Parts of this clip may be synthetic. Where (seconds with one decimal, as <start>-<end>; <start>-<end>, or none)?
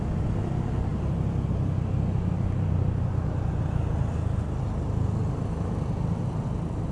none